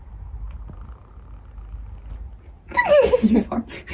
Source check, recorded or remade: recorded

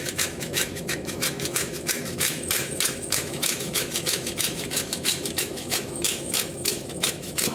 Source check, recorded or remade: remade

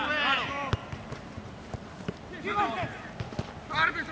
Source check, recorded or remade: recorded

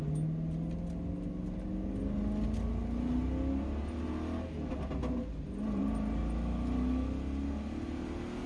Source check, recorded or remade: recorded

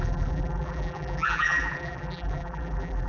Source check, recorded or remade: remade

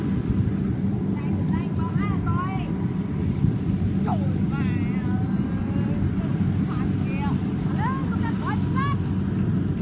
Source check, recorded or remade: recorded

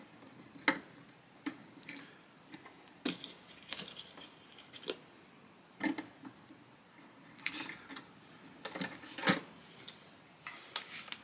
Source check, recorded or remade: recorded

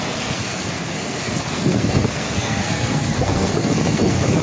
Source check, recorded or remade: remade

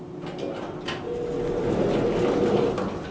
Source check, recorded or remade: recorded